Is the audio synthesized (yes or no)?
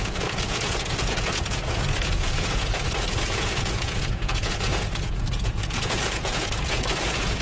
yes